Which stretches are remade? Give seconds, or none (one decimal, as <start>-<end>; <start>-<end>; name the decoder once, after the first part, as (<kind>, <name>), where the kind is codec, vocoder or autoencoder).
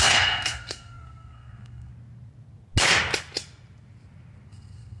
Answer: 0.0-1.9 (codec, SNAC); 4.5-5.0